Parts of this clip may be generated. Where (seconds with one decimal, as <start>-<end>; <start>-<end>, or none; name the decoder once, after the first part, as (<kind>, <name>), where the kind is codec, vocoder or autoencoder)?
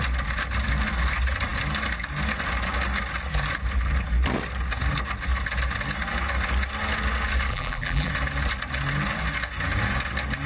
7.5-8.1 (vocoder, BigVGAN v2)